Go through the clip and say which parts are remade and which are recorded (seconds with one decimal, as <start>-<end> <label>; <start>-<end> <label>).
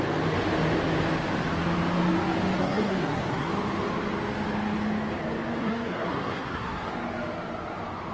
0.0-2.6 recorded; 2.6-3.5 remade; 3.5-5.6 recorded; 5.6-6.9 remade; 6.9-8.1 recorded